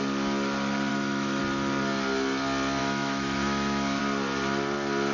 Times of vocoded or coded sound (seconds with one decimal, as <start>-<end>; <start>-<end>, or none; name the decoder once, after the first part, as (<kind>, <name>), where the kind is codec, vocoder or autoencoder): 0.9-1.4 (autoencoder, DAC-VAE); 2.8-4.0